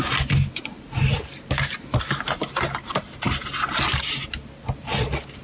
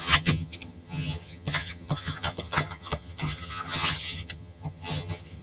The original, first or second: first